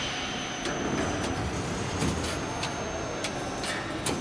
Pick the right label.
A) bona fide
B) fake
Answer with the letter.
A